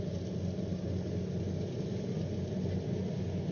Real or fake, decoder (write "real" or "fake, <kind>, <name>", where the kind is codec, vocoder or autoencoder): real